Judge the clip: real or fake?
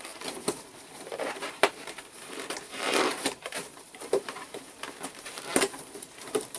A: fake